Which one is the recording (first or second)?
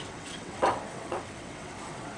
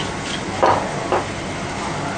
second